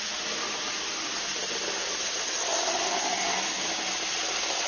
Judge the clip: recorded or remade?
recorded